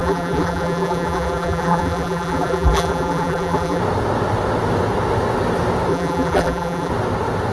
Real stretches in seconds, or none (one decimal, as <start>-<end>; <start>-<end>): 3.8-5.9; 6.9-7.5